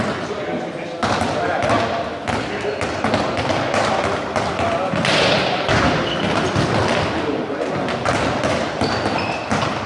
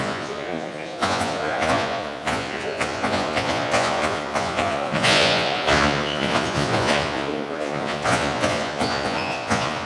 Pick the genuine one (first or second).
first